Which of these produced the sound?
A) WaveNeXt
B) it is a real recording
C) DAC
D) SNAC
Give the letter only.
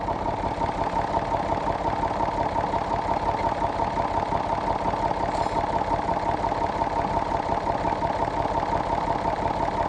B